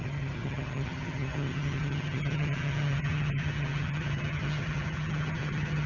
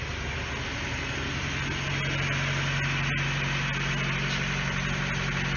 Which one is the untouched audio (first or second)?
second